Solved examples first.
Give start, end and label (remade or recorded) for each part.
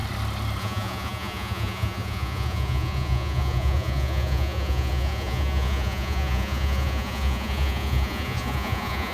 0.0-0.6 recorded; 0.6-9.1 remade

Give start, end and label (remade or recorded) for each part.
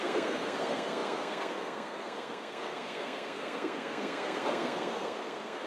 0.0-5.7 remade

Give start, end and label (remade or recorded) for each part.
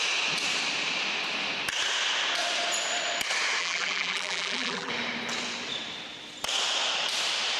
0.0-3.6 recorded; 3.6-4.9 remade; 4.9-7.6 recorded